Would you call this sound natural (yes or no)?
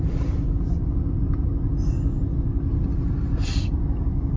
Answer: yes